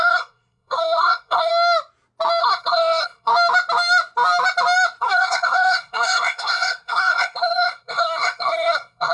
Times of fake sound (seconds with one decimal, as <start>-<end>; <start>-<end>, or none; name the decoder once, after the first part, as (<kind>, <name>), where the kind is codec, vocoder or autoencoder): 0.0-1.5 (codec, SNAC); 2.4-3.3; 5.0-9.1